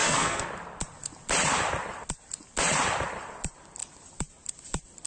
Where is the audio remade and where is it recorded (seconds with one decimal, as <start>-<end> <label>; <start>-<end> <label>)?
0.0-0.5 remade; 0.5-5.1 recorded